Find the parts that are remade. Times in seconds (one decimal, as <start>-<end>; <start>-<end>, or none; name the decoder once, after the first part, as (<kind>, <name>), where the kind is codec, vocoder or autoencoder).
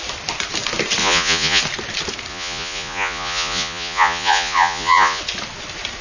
1.0-1.6 (vocoder, Vocos); 2.3-5.2